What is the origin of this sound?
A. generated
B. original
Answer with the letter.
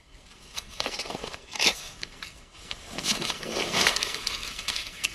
A